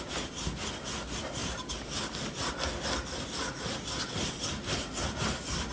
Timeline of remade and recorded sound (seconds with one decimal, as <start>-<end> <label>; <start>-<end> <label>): 0.0-5.7 recorded